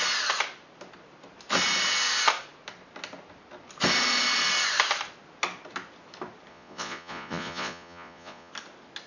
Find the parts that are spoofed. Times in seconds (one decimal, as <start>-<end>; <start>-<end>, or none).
6.5-8.5